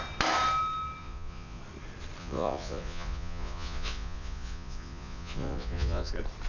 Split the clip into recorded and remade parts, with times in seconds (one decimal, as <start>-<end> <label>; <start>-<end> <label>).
0.0-1.0 recorded; 1.0-1.6 remade; 1.6-2.2 recorded; 2.2-6.1 remade; 6.1-6.5 recorded